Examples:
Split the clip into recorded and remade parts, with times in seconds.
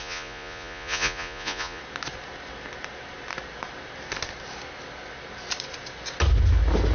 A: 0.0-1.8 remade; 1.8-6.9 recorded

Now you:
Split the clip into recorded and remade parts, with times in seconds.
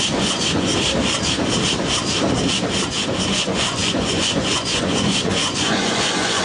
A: 0.0-0.7 remade; 0.7-3.2 recorded; 3.2-6.4 remade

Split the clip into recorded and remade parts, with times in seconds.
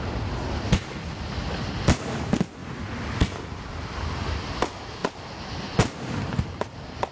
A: 0.0-7.1 recorded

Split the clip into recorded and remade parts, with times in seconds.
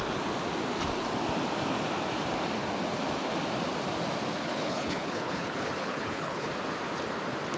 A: 0.0-4.4 recorded; 4.4-6.5 remade; 6.5-7.6 recorded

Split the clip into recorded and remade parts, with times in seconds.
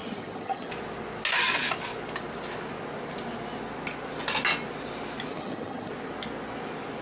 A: 0.0-0.7 remade; 0.7-5.3 recorded; 5.3-5.9 remade; 5.9-7.0 recorded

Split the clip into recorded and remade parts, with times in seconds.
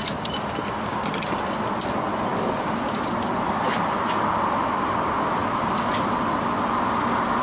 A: 0.0-7.4 recorded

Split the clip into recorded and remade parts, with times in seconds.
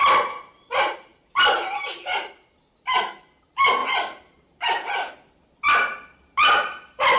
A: 0.0-7.2 recorded